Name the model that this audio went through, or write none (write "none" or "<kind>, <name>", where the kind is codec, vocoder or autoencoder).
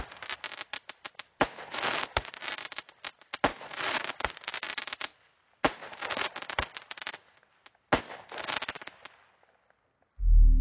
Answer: none